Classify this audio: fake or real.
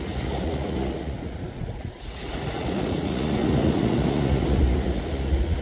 fake